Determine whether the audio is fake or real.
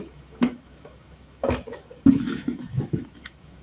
fake